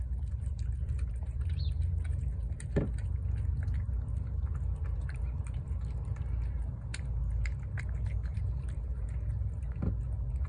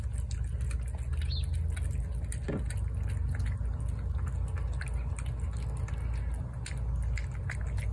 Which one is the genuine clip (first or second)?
second